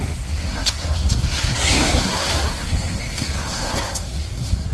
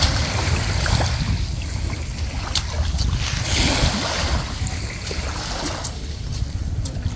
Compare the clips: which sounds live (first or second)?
second